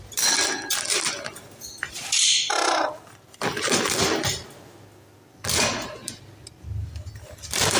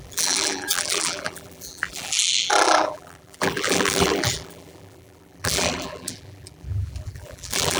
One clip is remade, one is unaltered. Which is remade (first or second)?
second